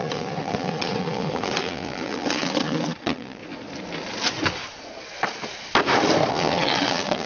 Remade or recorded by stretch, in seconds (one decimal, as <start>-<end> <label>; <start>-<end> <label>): 0.0-3.4 remade; 3.4-6.3 recorded; 6.3-7.3 remade